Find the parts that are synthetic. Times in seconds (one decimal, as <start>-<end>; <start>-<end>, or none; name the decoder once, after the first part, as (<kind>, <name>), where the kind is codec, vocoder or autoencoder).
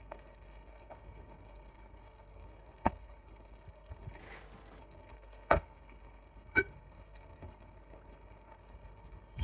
0.0-4.2 (codec, SNAC); 4.8-9.4